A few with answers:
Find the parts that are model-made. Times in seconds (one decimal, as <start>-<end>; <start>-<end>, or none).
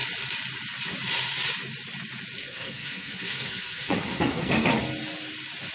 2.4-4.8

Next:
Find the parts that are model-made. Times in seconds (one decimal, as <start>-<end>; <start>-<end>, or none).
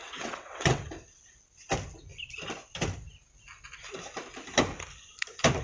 0.0-0.8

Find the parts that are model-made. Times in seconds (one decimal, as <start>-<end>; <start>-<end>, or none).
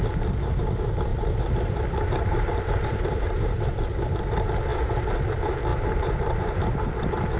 1.1-4.2; 5.7-6.9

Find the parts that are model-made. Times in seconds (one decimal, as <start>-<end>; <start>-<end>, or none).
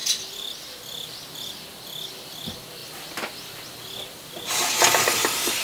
2.8-4.5